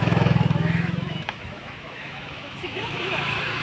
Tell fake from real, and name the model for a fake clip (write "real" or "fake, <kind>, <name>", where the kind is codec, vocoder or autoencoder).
fake, autoencoder, DAC-VAE